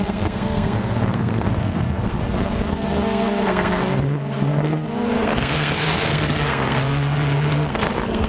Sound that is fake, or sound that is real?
fake